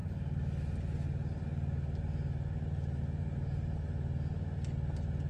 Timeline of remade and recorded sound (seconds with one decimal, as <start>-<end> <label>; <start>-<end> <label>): 0.0-5.3 recorded